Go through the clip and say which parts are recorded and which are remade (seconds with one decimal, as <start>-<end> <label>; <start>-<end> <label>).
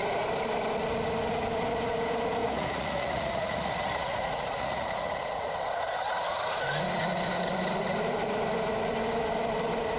0.0-2.4 recorded; 2.4-5.5 remade; 5.5-10.0 recorded